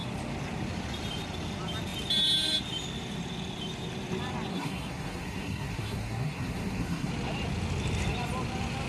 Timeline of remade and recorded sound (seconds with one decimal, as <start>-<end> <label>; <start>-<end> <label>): 0.0-4.5 recorded; 4.5-7.1 remade; 7.1-8.9 recorded